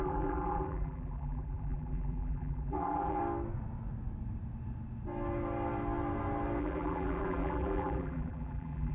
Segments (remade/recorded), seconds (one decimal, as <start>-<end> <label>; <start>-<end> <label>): 0.0-3.2 remade; 3.2-6.6 recorded; 6.6-8.9 remade